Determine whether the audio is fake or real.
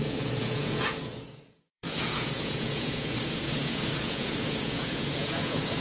fake